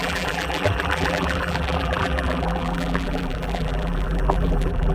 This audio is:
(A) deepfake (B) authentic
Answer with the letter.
A